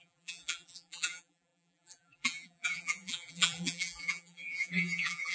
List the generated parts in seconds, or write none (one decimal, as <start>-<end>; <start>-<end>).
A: 0.0-5.3